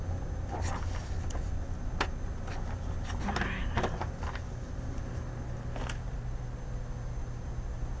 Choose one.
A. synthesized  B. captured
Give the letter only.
B